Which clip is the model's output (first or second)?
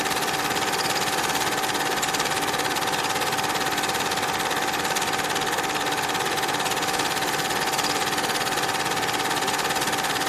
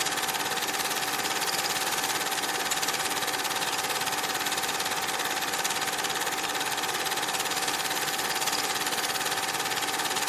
second